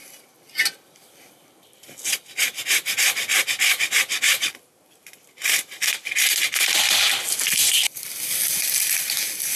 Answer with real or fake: real